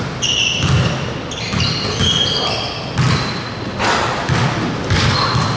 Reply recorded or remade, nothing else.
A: recorded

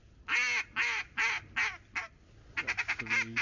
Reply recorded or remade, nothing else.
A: recorded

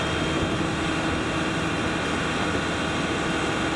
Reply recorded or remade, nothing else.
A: recorded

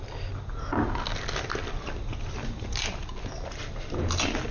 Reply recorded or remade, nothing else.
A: recorded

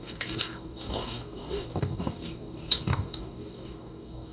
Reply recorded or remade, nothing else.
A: remade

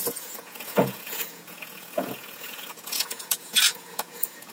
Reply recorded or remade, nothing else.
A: remade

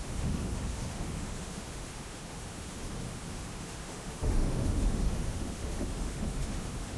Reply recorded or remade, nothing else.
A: remade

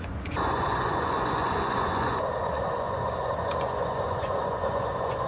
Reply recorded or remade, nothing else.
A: remade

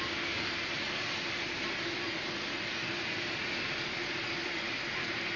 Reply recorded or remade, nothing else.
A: recorded